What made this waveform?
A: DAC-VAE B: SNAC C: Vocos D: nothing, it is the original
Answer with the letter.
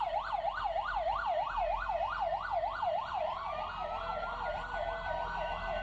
D